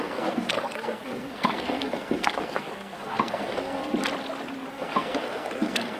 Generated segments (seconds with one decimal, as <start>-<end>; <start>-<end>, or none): 0.0-3.9; 4.7-6.0